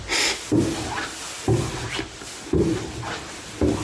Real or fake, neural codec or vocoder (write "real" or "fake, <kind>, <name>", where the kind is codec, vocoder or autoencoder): real